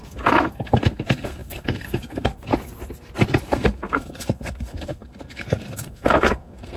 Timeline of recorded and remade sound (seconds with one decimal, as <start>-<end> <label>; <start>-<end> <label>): 0.0-2.5 remade; 2.5-3.4 recorded; 3.4-6.8 remade